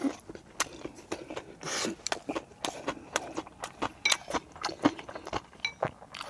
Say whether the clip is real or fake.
real